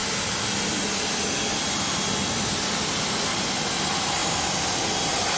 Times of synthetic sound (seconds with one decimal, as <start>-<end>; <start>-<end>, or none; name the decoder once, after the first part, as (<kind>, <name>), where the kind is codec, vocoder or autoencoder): none

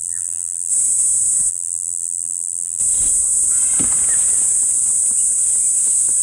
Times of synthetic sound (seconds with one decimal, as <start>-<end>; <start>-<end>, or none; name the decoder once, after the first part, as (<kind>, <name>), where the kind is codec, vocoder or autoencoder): 0.0-0.7 (vocoder, BigVGAN v2); 1.5-2.8

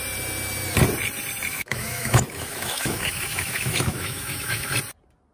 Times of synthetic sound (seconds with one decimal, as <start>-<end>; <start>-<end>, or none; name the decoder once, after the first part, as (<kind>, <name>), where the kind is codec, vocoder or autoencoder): 1.5-4.7 (autoencoder, DAC-VAE)

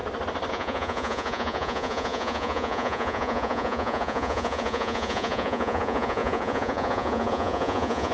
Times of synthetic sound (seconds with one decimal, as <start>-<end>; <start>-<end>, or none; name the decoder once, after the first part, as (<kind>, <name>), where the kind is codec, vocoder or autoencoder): 0.5-8.1 (vocoder, Vocos)

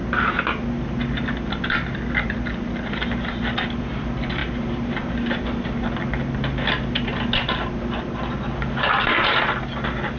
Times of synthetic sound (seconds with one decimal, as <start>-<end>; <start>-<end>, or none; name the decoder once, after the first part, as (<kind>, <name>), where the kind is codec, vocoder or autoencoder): none